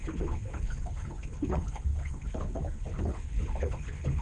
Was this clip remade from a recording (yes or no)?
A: yes